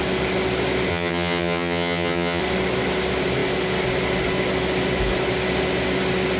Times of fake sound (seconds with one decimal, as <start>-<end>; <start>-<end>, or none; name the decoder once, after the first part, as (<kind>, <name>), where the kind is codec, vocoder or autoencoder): 0.9-2.4 (vocoder, HiFi-GAN)